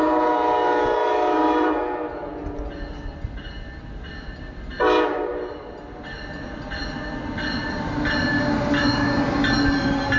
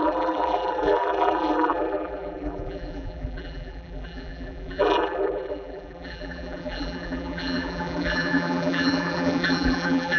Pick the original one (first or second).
first